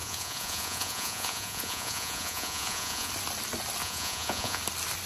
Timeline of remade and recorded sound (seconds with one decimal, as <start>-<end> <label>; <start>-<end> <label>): 0.0-3.1 remade; 3.1-3.8 recorded; 3.8-4.6 remade; 4.6-5.1 recorded